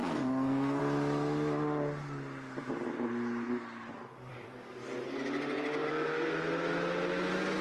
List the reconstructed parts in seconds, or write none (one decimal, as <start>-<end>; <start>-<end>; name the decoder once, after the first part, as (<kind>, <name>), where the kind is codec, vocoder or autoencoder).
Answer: 0.0-0.8 (codec, SNAC)